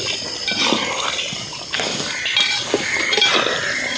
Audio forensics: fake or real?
real